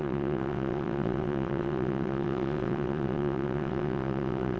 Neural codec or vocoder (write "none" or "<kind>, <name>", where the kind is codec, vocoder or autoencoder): vocoder, WaveNeXt